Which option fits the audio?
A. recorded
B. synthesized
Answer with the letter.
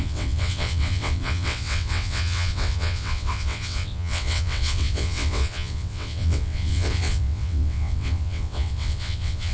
B